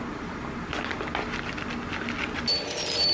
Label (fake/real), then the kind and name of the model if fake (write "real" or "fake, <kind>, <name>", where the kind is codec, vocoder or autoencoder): real